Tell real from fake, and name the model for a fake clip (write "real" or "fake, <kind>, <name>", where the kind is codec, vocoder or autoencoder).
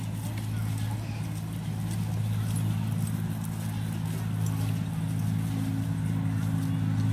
real